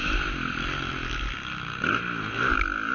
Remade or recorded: recorded